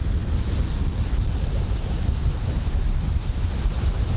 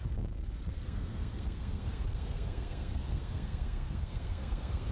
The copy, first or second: second